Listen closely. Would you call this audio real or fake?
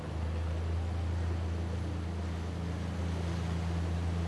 real